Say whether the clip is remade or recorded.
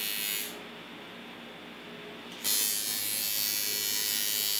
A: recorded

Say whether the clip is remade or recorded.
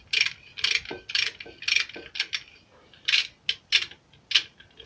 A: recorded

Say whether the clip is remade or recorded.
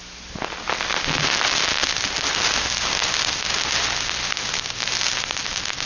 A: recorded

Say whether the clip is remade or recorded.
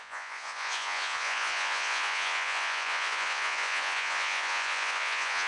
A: remade